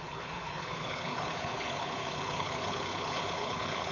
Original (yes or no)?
no